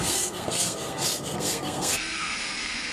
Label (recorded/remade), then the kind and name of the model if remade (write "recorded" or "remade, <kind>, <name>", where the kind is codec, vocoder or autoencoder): remade, codec, SNAC